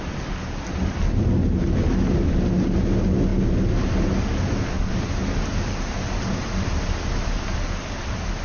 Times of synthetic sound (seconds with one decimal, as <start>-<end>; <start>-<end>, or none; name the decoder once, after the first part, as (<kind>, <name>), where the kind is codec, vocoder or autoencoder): none